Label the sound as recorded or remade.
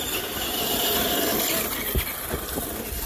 remade